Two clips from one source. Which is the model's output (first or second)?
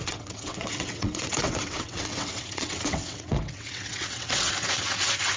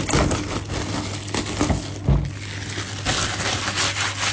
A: first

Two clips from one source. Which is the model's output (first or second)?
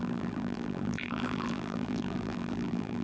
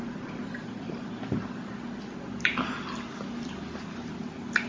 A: first